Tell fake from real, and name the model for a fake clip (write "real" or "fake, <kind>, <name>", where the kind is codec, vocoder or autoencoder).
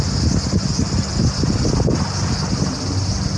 real